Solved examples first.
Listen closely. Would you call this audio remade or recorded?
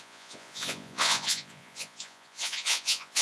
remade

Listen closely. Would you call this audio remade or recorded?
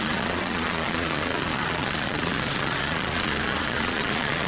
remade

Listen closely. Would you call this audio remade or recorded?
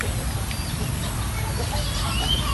recorded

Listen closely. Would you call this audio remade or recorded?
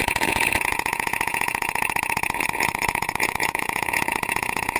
remade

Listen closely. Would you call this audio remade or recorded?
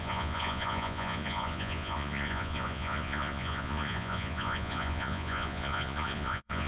remade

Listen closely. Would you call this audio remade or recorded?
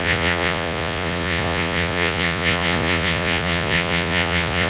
remade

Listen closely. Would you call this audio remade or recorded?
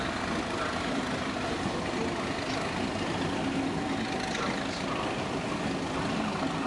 recorded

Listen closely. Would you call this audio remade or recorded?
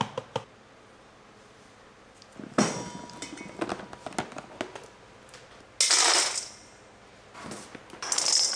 recorded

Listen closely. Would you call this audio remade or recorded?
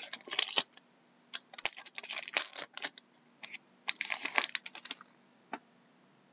recorded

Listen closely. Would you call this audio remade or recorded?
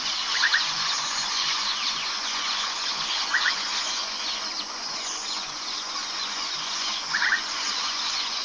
remade